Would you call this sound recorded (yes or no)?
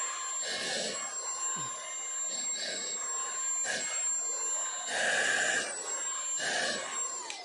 yes